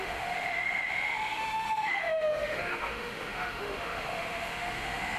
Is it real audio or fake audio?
fake